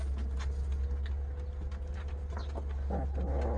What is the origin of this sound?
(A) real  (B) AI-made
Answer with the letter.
A